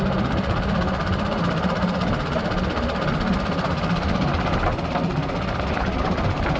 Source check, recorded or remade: recorded